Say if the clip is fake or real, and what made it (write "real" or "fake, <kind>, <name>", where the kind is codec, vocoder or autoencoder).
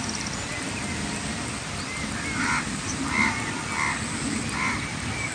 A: real